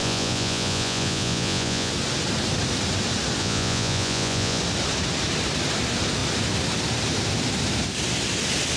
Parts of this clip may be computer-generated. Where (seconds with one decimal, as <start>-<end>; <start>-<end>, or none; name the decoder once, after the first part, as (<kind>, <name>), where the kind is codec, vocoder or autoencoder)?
0.0-1.9 (vocoder, Vocos); 3.4-4.6

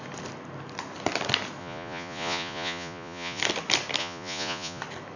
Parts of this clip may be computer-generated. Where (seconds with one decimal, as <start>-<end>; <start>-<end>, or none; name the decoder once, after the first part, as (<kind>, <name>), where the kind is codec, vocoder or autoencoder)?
1.6-3.4 (vocoder, Vocos); 4.0-4.8

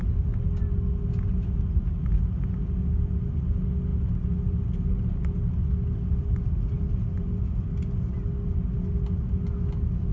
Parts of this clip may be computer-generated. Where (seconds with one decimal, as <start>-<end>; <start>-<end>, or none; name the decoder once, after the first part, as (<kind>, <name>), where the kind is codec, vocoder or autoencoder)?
none

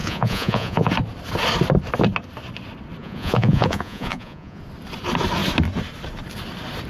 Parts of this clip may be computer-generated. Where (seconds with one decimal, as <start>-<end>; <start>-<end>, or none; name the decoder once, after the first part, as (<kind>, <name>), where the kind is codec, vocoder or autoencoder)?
0.0-0.9 (vocoder, Vocos); 3.0-4.6

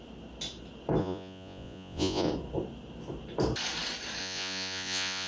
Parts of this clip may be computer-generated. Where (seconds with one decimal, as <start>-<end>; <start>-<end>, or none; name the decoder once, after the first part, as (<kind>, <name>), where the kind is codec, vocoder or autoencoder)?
1.0-2.3 (vocoder, Vocos); 4.2-5.3

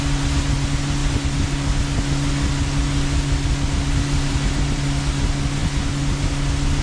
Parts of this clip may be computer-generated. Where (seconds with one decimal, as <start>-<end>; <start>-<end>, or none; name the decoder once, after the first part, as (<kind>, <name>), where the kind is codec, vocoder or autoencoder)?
none

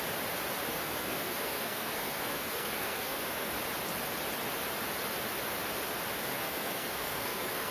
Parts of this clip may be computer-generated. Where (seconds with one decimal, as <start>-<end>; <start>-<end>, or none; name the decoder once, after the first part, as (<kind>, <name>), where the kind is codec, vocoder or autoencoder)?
0.7-3.5 (codec, SNAC); 6.3-7.7

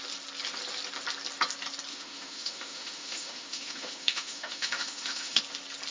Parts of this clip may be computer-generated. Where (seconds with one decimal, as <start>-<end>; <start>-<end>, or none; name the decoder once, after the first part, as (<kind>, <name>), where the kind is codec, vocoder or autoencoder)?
1.9-5.4 (autoencoder, DAC-VAE)